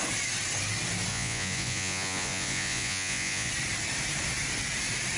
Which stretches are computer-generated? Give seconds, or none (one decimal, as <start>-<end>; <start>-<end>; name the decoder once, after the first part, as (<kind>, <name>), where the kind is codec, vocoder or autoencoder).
1.1-3.5 (vocoder, Vocos)